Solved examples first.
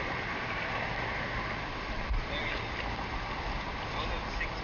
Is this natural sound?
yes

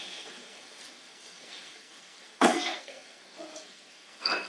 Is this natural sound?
no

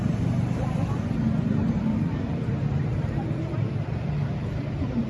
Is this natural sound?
no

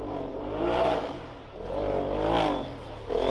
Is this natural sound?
yes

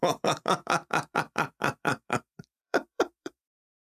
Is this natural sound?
no